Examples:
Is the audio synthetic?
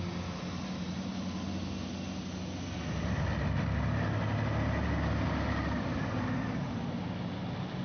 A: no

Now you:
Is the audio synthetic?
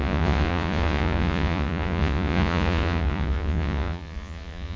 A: yes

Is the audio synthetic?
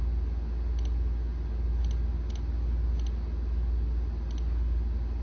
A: no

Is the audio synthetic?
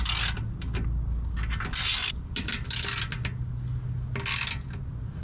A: no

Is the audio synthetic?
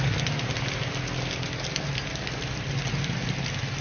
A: no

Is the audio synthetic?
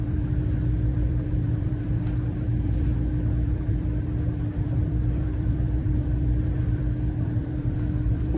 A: yes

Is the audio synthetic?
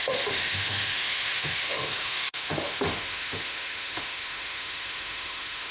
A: yes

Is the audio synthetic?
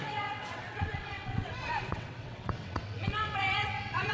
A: yes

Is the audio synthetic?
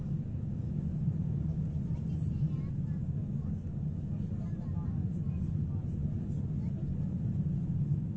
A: no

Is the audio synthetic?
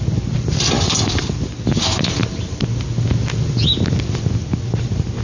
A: yes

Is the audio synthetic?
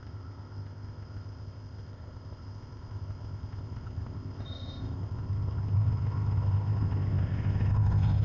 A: yes